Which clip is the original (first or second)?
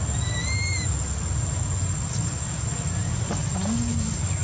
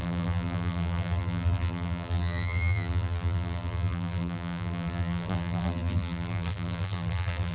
first